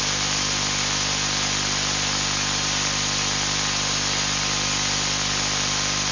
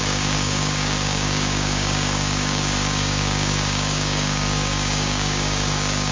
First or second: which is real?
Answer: first